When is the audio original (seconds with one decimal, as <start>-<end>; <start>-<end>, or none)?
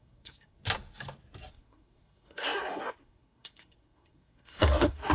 0.6-1.5